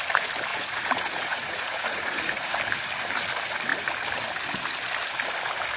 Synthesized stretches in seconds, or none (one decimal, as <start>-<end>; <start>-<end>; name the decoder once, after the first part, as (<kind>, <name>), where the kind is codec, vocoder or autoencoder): 0.5-2.6 (vocoder, Vocos)